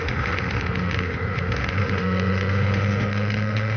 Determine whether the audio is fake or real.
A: fake